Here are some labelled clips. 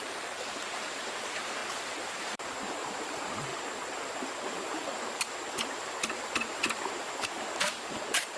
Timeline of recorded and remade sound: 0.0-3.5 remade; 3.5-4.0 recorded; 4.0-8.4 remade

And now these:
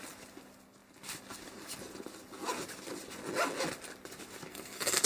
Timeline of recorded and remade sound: 0.0-4.5 recorded; 4.5-5.1 remade

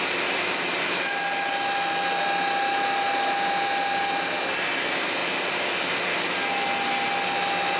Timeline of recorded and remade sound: 0.0-7.8 recorded

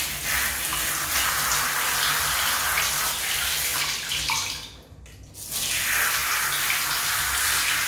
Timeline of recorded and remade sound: 0.0-7.9 recorded

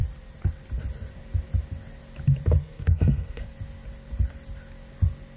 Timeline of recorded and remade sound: 0.0-2.6 recorded; 2.6-3.4 remade; 3.4-5.4 recorded

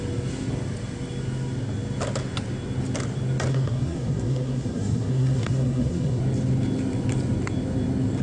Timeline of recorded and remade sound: 0.0-3.5 recorded; 3.5-6.2 remade; 6.2-8.2 recorded

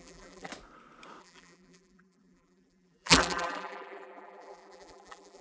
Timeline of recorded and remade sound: 0.0-0.5 remade; 0.5-1.2 recorded; 1.2-5.4 remade

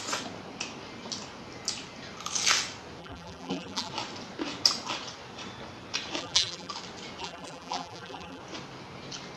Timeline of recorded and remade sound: 0.0-3.0 recorded; 3.0-3.9 remade; 3.9-6.2 recorded; 6.2-6.7 remade; 6.7-7.2 recorded; 7.2-8.4 remade; 8.4-9.4 recorded